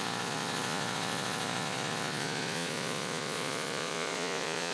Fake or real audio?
fake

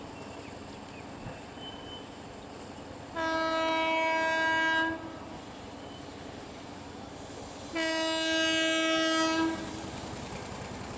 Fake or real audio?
real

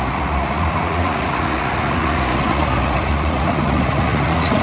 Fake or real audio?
fake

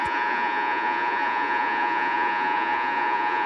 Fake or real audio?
fake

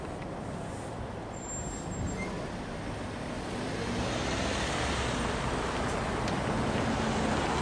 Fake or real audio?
real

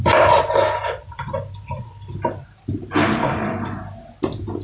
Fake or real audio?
real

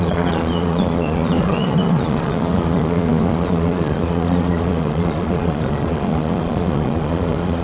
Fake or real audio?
fake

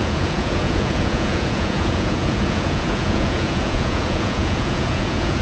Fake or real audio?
fake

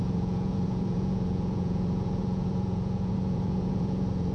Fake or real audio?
fake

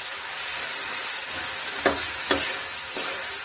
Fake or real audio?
real